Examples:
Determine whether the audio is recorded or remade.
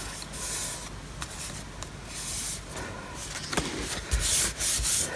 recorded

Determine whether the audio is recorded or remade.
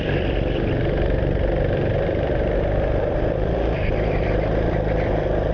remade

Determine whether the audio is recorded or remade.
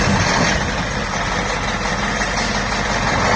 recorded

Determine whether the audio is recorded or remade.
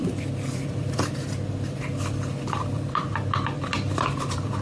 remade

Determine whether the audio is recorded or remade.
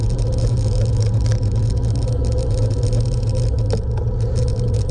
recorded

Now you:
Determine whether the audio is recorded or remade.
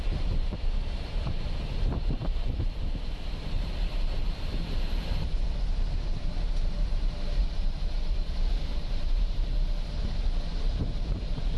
remade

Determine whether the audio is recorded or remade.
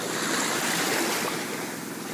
recorded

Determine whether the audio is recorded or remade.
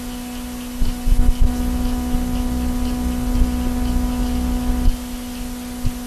recorded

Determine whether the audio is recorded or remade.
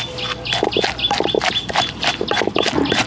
recorded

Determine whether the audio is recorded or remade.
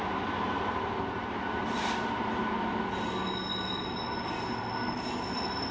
recorded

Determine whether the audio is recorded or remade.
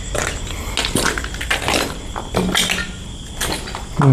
recorded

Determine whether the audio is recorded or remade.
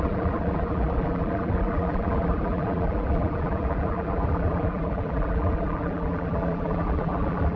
remade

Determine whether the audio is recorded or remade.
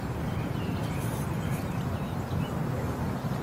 remade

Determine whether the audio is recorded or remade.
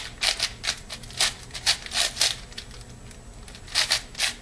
recorded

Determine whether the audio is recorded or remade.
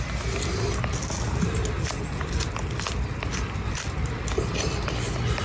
recorded